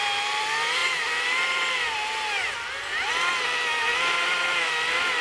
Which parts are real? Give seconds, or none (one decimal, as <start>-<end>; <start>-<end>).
0.0-3.9; 4.6-5.2